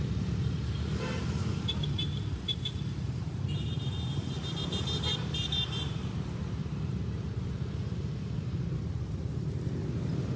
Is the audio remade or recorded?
remade